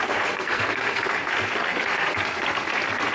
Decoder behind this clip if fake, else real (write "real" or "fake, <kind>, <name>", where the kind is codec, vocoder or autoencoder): fake, codec, SNAC